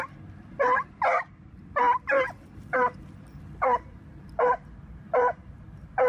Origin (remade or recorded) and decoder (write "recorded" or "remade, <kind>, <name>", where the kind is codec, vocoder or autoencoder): remade, vocoder, BigVGAN v2